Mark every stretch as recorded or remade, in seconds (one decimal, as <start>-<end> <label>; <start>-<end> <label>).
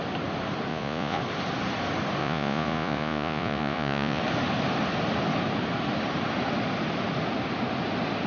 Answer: 0.0-0.7 recorded; 0.7-1.2 remade; 1.2-2.2 recorded; 2.2-4.2 remade; 4.2-8.3 recorded